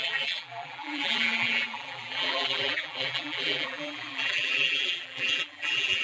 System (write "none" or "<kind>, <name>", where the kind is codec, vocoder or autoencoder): vocoder, BigVGAN v2